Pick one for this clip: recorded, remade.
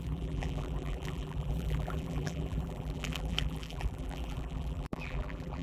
remade